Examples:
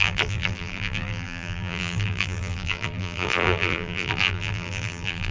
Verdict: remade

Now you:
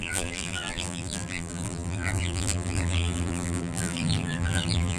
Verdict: remade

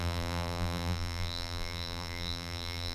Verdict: remade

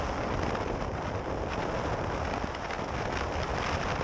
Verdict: recorded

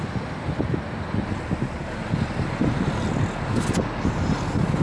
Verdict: recorded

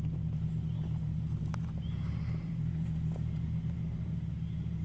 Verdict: remade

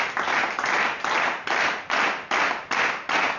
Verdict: recorded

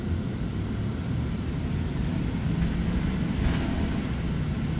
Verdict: recorded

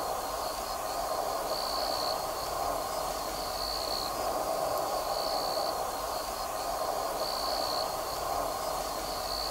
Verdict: recorded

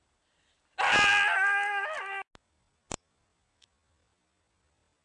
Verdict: recorded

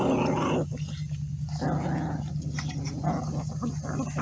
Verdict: recorded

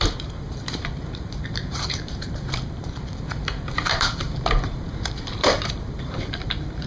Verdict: remade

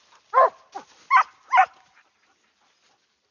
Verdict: recorded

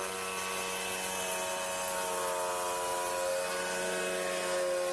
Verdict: recorded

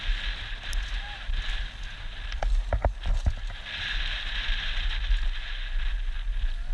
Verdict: recorded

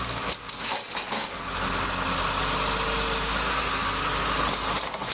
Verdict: recorded